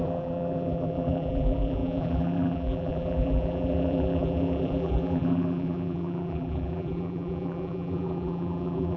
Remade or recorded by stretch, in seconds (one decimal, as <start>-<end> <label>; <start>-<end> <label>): 0.0-9.0 remade